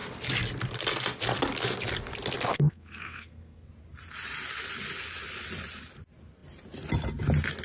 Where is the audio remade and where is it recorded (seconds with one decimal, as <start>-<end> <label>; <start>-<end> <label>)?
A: 0.0-2.5 recorded; 2.5-3.7 remade; 3.7-7.6 recorded